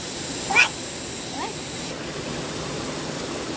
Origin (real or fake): real